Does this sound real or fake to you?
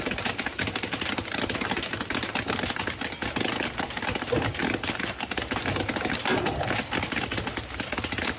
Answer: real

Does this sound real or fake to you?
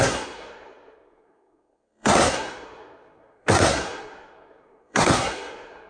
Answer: fake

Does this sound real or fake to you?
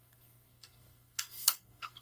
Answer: fake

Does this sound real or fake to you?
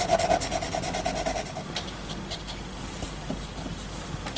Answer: real